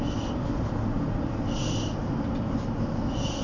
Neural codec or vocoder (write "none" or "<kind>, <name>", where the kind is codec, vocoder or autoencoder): none